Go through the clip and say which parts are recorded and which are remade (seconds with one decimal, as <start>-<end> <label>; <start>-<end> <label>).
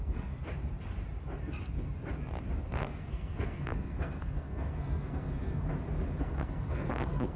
0.0-0.4 remade; 0.4-2.8 recorded; 2.8-5.7 remade; 5.7-6.2 recorded; 6.2-7.4 remade